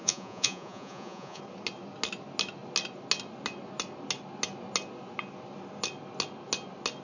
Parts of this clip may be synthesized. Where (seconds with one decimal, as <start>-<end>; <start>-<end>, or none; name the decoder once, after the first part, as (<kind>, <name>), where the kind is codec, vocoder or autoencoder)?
0.0-1.4 (vocoder, Vocos)